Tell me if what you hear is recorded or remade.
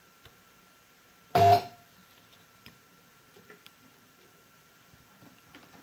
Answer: remade